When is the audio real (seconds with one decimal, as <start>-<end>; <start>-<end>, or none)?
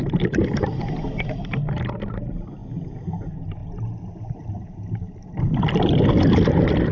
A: 0.0-6.9